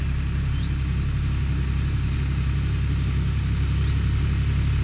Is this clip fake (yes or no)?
no